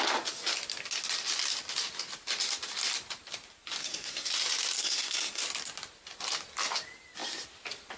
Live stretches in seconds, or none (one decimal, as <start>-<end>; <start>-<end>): 0.0-3.8; 4.3-4.8; 5.4-8.0